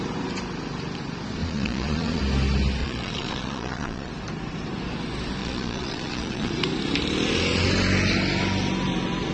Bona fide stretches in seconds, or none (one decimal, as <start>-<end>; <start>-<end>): 0.0-1.4; 2.2-2.8; 4.1-5.4; 6.5-9.3

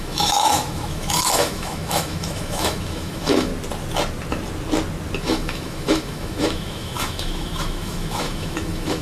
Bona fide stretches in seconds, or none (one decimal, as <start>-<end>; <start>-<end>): 3.5-5.2

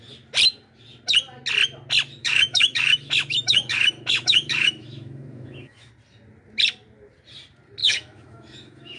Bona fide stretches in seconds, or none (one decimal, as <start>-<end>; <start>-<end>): 0.0-2.2; 5.9-7.8

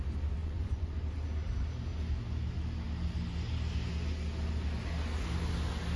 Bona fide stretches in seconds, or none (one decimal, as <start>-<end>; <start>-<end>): 0.0-0.4; 1.0-6.0